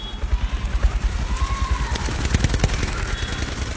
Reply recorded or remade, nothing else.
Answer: recorded